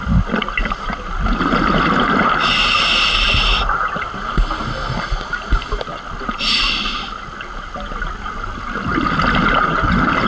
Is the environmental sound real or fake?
real